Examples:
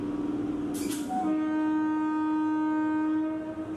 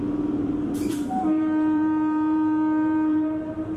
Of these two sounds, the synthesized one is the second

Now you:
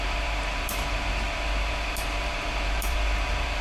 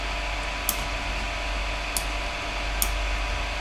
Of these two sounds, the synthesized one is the first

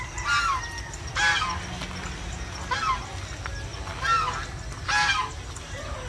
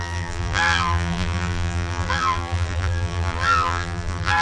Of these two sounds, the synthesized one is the second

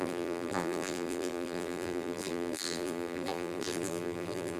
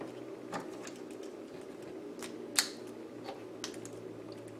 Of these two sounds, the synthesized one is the first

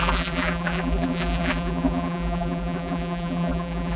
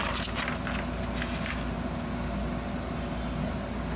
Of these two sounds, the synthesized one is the first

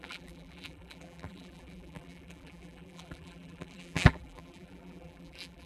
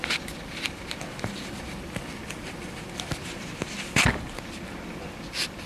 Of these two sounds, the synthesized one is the first